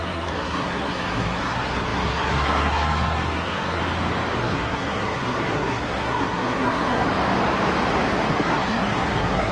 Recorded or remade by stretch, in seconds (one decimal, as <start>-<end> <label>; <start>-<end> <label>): 0.0-3.8 remade; 3.8-4.4 recorded; 4.4-7.1 remade; 7.1-8.3 recorded; 8.3-9.5 remade